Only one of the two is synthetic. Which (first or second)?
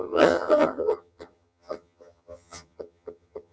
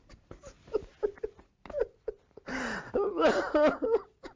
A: first